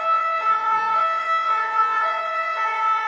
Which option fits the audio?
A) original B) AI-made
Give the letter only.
B